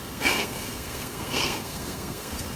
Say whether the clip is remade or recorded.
remade